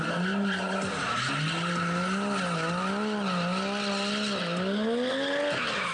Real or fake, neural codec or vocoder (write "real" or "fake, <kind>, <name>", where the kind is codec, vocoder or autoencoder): real